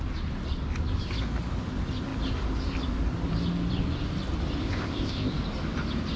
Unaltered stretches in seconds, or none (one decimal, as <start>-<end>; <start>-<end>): 0.0-4.6; 5.3-6.2